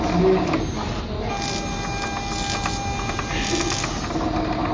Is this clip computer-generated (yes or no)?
no